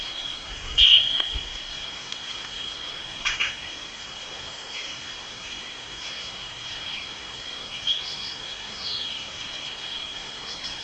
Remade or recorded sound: remade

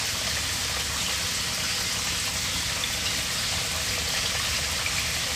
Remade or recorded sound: recorded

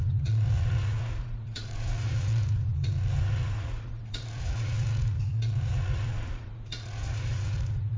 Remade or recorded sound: remade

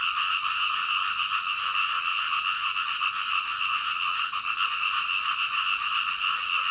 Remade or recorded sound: recorded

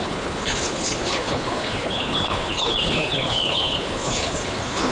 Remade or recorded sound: remade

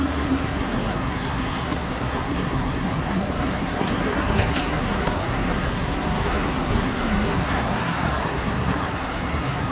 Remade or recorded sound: remade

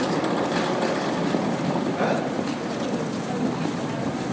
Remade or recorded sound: recorded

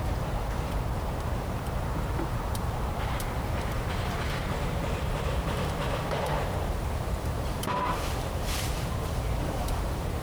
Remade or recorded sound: remade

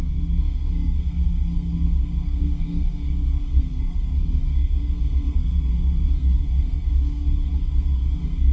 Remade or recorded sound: remade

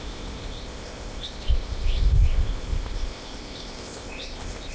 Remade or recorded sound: remade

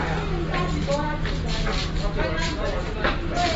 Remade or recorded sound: recorded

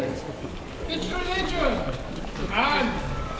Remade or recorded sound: remade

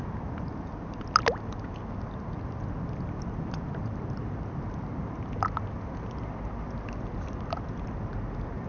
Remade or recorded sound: recorded